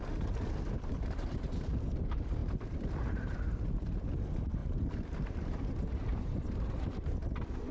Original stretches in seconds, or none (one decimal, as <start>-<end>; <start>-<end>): 2.4-3.0